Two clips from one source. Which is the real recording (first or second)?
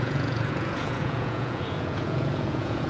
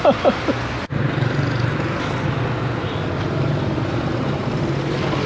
second